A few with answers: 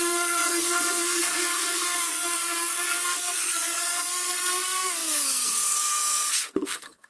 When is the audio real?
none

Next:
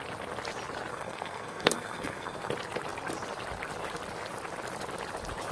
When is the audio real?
0.0-0.9; 2.5-5.5

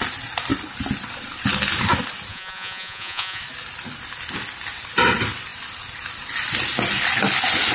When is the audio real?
0.0-2.3; 3.4-7.7

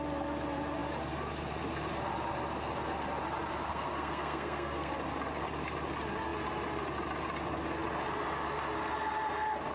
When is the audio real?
0.0-3.7; 4.9-9.7

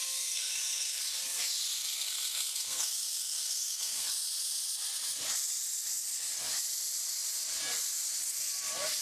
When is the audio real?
1.0-1.8; 4.1-9.0

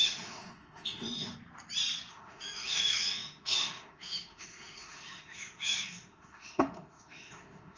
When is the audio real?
1.3-2.1

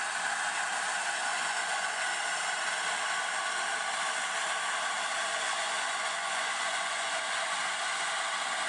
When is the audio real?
0.0-1.3; 2.0-5.3; 8.1-8.7

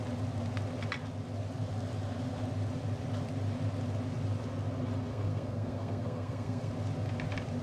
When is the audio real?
0.0-5.1; 6.7-7.6